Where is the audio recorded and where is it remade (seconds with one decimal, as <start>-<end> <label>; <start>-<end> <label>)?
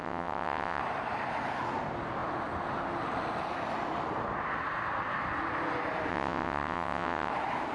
0.0-0.8 remade; 0.8-6.1 recorded; 6.1-7.3 remade; 7.3-7.7 recorded